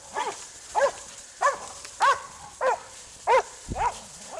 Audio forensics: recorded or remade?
recorded